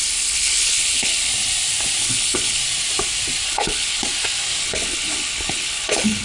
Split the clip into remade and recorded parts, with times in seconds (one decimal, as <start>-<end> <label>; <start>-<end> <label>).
0.0-1.3 remade; 1.3-2.0 recorded; 2.0-2.6 remade; 2.6-3.5 recorded; 3.5-4.0 remade; 4.0-4.6 recorded; 4.6-6.2 remade